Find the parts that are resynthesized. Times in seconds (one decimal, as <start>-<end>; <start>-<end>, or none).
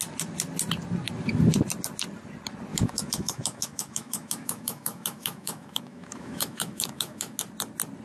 2.7-7.4